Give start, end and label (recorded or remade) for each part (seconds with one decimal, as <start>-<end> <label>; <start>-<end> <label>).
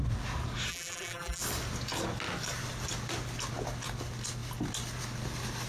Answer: 0.0-0.7 recorded; 0.7-1.4 remade; 1.4-5.7 recorded